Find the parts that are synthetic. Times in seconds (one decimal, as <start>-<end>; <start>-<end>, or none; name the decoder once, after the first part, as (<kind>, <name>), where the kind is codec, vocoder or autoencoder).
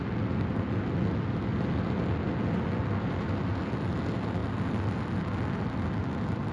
none